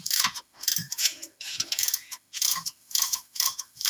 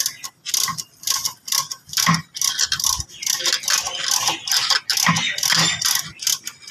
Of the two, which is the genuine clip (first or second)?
second